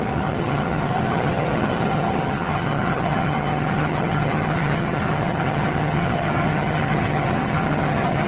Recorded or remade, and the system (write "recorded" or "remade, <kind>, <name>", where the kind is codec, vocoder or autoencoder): remade, vocoder, HiFi-GAN